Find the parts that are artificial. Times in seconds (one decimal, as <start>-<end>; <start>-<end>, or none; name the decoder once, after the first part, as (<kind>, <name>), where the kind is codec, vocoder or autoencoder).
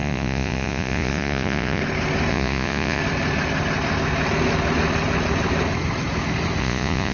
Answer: 0.0-1.8 (vocoder, Vocos); 2.3-3.0; 6.6-7.1